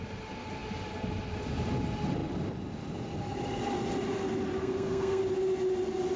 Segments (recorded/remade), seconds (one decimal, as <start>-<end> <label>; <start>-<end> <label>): 0.0-4.6 recorded; 4.6-5.2 remade; 5.2-6.2 recorded